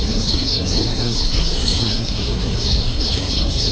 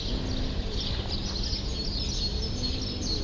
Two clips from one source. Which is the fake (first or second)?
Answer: first